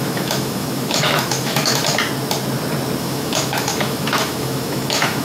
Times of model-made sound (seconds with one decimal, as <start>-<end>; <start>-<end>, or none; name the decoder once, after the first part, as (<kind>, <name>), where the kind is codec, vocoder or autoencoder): 0.0-1.8 (autoencoder, DAC-VAE); 3.0-5.2